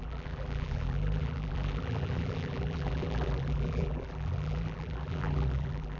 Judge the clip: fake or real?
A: fake